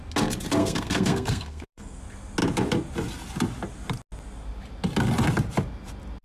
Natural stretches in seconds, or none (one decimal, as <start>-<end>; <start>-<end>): 0.0-0.6; 2.0-6.2